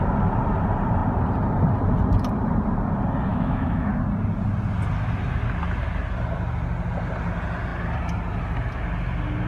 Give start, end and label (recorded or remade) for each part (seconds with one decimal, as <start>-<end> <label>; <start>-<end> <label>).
0.0-3.3 recorded; 3.3-3.9 remade; 3.9-9.5 recorded